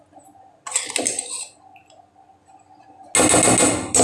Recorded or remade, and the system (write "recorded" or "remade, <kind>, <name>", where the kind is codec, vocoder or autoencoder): recorded